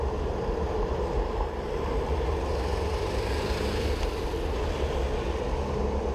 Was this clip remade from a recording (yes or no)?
no